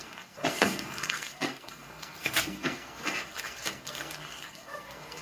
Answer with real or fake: fake